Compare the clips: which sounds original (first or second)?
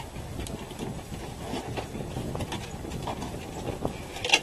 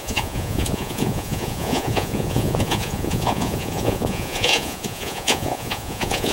first